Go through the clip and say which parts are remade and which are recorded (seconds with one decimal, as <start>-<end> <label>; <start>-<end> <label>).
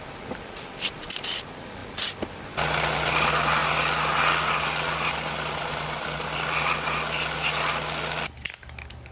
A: 0.0-9.1 recorded